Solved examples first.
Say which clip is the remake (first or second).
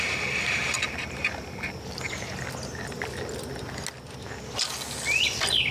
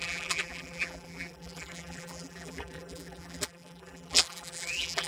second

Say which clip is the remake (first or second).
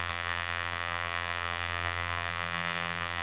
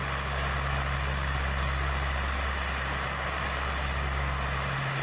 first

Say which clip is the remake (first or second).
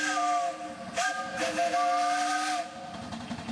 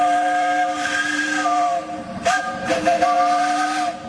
second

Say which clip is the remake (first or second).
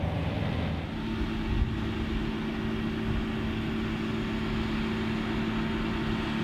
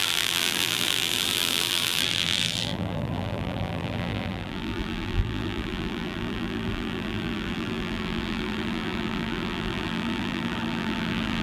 second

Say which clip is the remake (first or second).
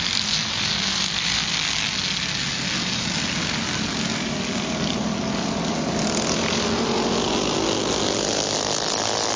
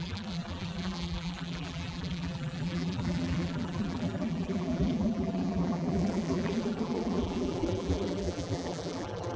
second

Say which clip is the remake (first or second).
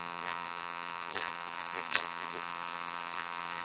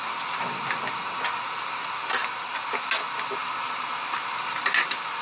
first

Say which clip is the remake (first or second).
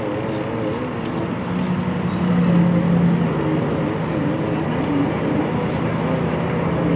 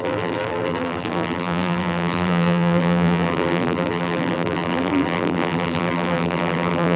second